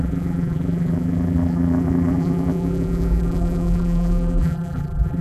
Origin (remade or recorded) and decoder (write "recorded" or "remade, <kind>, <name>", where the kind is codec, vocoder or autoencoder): remade, vocoder, BigVGAN v2